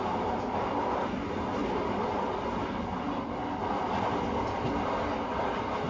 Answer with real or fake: real